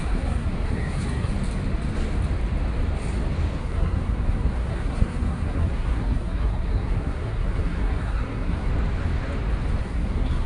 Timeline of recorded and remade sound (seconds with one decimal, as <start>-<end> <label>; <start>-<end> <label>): 0.0-1.3 remade; 1.3-3.6 recorded; 3.6-8.7 remade; 8.7-9.8 recorded; 9.8-10.5 remade